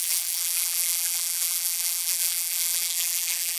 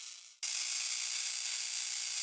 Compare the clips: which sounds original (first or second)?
second